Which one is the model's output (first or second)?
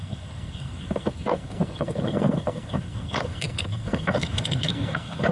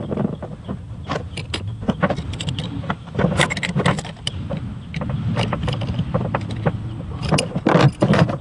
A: first